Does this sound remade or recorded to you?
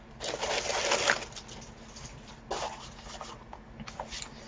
recorded